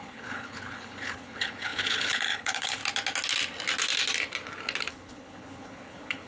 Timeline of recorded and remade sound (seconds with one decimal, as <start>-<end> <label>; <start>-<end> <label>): 0.0-2.8 remade; 2.8-4.9 recorded; 4.9-6.3 remade

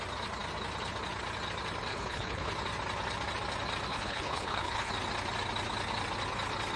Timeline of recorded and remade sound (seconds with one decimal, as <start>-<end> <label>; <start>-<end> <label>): 0.0-1.9 recorded; 1.9-2.5 remade; 2.5-3.9 recorded; 3.9-4.9 remade; 4.9-6.8 recorded